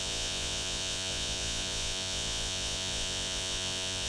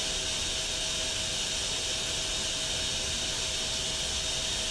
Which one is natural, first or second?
second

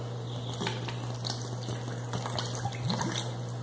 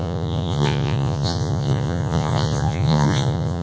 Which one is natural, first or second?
first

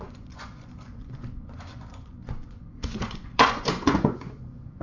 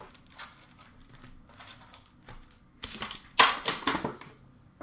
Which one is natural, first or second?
second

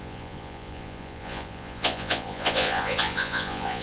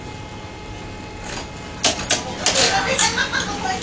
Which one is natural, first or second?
second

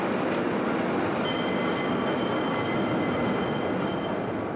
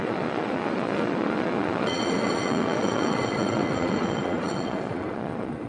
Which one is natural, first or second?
first